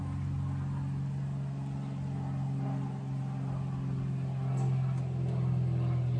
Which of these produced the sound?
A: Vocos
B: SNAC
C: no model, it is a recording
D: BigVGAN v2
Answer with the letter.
C